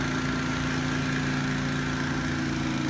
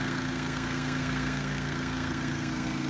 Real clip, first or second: first